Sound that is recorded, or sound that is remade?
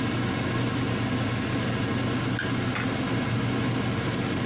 recorded